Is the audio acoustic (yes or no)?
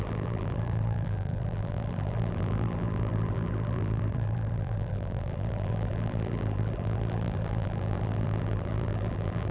no